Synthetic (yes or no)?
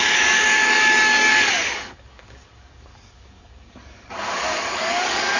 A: yes